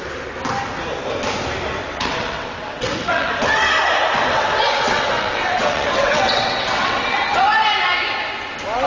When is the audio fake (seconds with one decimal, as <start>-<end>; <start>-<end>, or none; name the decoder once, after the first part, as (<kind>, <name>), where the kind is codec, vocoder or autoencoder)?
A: 1.9-3.3 (vocoder, WaveNeXt); 4.3-7.4